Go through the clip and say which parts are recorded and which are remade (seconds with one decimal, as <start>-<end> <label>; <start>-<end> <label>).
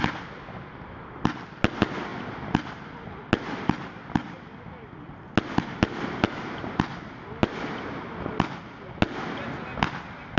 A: 0.0-10.4 recorded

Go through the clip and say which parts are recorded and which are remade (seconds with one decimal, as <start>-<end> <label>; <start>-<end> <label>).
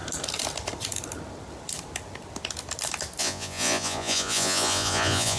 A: 0.0-3.2 recorded; 3.2-5.4 remade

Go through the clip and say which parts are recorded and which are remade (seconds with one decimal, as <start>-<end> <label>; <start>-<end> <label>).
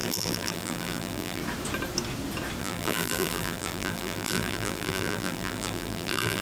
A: 0.0-1.4 remade; 1.4-2.6 recorded; 2.6-6.4 remade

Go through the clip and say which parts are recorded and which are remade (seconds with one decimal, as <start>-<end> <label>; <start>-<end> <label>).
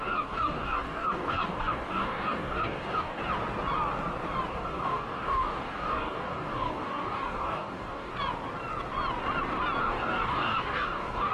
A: 0.0-3.2 remade; 3.2-4.5 recorded; 4.5-8.1 remade; 8.1-9.8 recorded; 9.8-11.3 remade